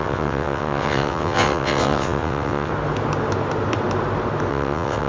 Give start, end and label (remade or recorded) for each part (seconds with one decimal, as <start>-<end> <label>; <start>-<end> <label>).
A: 0.0-2.7 remade; 2.7-4.5 recorded; 4.5-5.1 remade